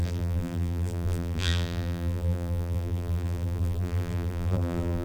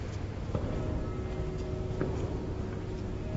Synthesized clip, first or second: first